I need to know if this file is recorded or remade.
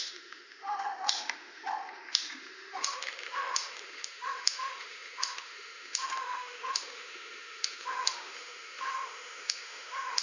remade